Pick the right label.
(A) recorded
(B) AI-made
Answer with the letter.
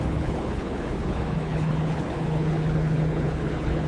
B